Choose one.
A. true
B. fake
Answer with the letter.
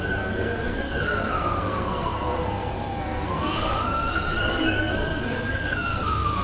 B